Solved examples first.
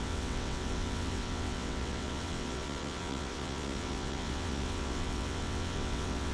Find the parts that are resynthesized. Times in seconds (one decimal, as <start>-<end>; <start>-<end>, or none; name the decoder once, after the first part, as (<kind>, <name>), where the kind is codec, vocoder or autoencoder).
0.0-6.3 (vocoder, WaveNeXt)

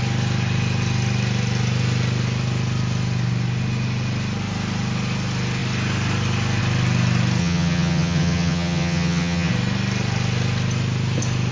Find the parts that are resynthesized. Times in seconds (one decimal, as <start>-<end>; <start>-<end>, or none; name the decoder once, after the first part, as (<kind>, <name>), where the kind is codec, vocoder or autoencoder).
7.4-9.5 (vocoder, HiFi-GAN)

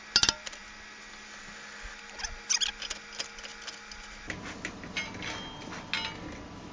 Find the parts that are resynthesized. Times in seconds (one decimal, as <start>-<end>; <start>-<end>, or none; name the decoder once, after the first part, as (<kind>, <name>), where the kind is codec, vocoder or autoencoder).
none

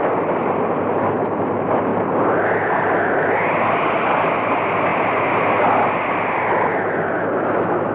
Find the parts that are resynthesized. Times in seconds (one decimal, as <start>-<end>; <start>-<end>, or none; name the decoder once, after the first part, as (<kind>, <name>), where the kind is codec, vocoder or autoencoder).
0.4-1.0 (vocoder, BigVGAN v2)